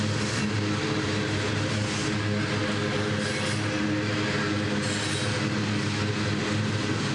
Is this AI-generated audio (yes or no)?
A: no